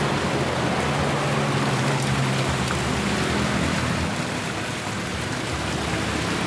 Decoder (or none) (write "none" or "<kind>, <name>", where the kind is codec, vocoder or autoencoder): none